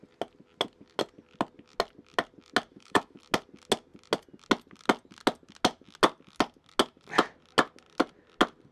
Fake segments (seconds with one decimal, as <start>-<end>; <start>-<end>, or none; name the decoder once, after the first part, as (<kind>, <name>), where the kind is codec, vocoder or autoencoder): 2.7-3.2 (autoencoder, DAC-VAE)